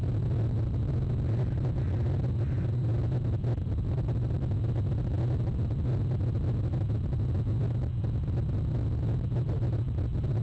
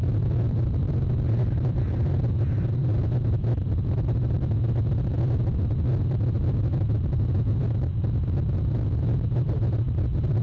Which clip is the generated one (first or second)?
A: second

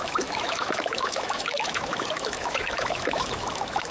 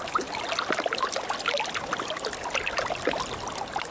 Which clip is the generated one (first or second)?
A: first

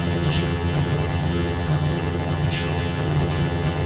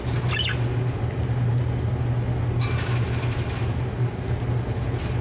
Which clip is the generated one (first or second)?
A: first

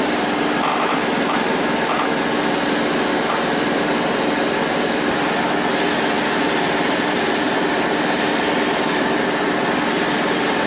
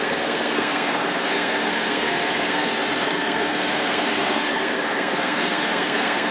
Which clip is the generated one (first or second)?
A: second